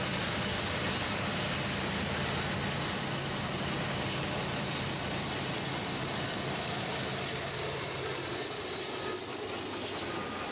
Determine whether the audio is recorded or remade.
recorded